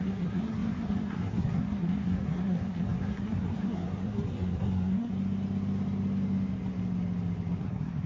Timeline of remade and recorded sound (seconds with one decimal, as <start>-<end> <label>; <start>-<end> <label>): 0.0-5.1 remade; 5.1-7.6 recorded; 7.6-8.1 remade